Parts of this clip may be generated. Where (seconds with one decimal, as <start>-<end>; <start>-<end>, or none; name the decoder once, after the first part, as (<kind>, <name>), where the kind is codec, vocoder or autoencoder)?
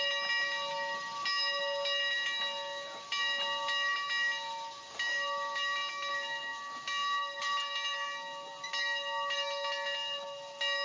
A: none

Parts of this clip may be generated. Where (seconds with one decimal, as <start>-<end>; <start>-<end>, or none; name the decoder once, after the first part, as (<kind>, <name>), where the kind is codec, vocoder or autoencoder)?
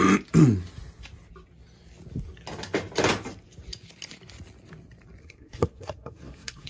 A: 5.2-6.7 (codec, SNAC)